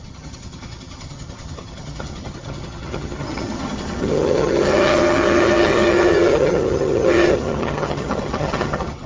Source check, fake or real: fake